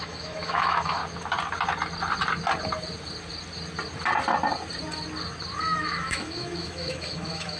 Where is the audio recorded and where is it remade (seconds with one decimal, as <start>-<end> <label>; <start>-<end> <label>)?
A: 0.0-1.0 remade; 1.0-5.6 recorded; 5.6-7.6 remade